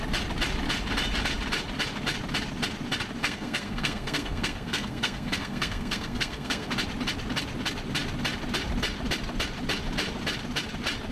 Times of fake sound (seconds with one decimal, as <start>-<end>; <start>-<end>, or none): 3.2-6.7